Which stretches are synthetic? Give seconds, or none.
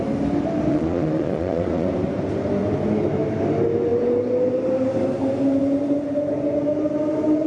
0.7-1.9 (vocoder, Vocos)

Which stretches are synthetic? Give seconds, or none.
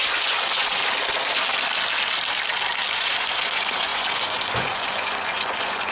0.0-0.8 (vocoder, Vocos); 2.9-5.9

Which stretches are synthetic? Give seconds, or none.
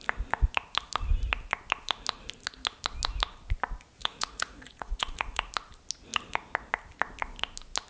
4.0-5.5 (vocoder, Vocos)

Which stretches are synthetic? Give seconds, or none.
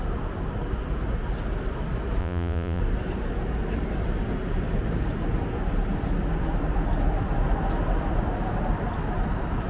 2.2-2.8 (vocoder, Vocos)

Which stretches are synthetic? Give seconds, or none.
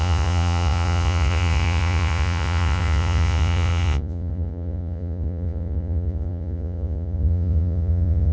0.0-8.3 (vocoder, Vocos)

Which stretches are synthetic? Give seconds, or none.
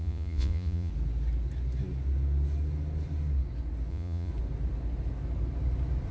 0.0-0.9 (vocoder, Vocos); 3.9-4.3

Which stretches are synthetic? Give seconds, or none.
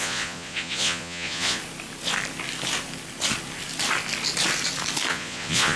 0.0-1.6 (vocoder, Vocos); 5.1-5.8